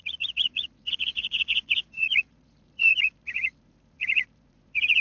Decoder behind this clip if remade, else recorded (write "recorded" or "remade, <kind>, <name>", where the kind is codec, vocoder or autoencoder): remade, vocoder, Vocos